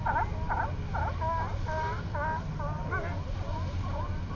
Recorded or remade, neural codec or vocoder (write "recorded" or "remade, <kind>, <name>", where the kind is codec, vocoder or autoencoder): recorded